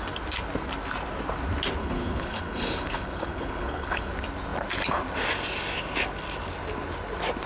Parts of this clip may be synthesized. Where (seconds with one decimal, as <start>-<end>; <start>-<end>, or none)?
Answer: 1.8-4.1